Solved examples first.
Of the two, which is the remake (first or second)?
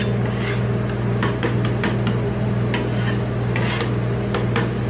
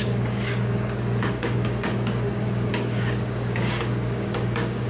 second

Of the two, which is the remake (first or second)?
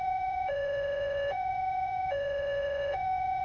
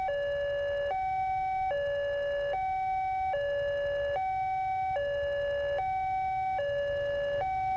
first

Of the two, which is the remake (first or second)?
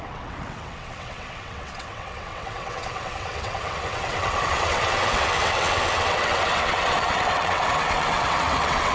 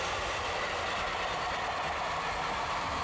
first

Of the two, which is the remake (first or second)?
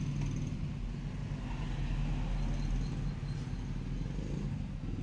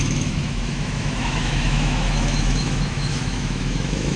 second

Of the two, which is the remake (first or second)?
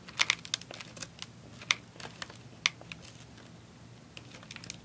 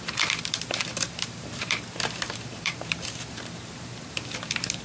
second